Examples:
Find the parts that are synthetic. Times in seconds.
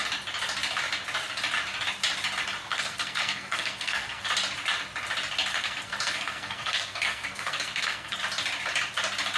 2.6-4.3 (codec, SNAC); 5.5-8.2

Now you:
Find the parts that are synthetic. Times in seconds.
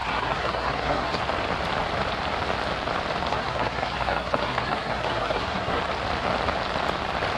0.0-1.2 (codec, SNAC); 3.3-5.8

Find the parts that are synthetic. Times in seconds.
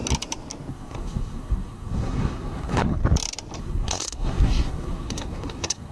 0.7-3.0 (codec, SNAC); 3.6-5.9